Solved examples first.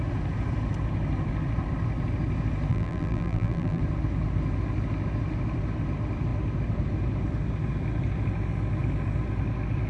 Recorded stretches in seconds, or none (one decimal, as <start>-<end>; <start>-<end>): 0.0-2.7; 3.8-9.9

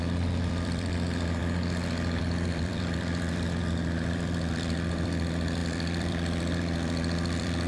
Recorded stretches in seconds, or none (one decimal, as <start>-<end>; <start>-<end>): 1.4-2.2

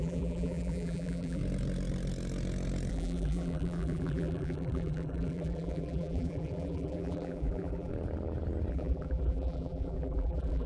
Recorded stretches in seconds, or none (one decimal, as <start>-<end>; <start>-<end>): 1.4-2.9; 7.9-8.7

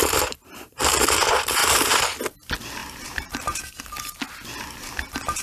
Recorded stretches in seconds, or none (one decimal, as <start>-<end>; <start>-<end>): 0.8-1.6; 2.2-2.8; 3.7-5.4

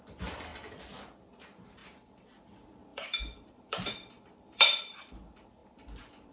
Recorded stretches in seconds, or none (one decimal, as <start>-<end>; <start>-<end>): 0.0-0.5; 1.0-1.8; 2.4-2.9; 5.1-6.3

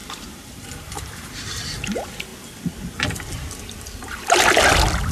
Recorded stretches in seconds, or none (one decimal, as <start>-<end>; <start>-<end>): 1.6-5.1

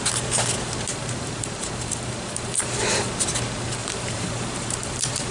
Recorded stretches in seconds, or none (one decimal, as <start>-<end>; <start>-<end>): 0.0-0.9; 2.8-3.8